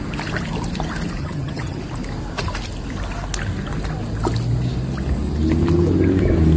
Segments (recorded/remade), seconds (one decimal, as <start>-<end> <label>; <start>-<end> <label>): 0.0-1.2 recorded; 1.2-1.8 remade; 1.8-6.6 recorded